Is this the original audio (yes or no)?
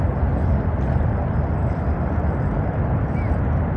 yes